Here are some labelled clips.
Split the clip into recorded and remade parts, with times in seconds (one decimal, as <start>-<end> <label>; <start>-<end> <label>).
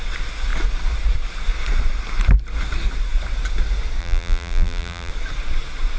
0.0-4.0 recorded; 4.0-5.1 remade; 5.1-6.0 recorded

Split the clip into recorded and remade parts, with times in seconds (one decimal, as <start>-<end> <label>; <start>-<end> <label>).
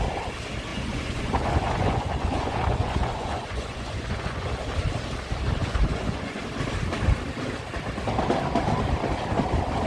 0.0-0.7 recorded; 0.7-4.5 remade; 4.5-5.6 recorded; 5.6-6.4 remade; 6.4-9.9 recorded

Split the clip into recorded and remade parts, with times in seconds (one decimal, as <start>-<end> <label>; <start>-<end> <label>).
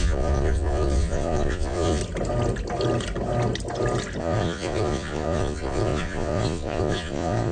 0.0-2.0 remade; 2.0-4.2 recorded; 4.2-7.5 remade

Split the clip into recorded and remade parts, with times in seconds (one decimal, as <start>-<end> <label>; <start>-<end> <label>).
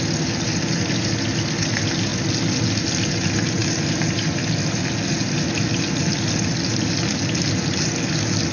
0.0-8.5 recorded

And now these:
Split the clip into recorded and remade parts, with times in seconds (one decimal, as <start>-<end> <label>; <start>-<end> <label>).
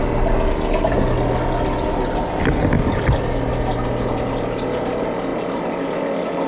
0.0-6.5 recorded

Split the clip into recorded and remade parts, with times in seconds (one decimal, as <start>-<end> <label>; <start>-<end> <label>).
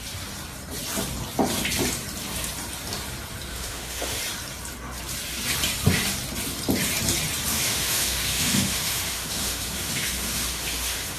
0.0-3.5 recorded; 3.5-4.2 remade; 4.2-7.5 recorded; 7.5-11.2 remade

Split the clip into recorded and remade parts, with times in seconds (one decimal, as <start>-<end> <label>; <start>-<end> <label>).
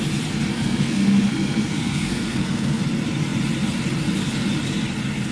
0.0-0.5 recorded; 0.5-2.8 remade; 2.8-5.3 recorded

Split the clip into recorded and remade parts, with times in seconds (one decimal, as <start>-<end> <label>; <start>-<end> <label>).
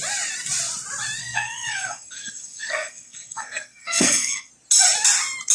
0.0-1.2 recorded; 1.2-4.5 remade; 4.5-5.5 recorded